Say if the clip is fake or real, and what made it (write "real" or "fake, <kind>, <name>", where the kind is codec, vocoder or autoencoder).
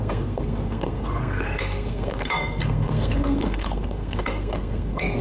fake, codec, SNAC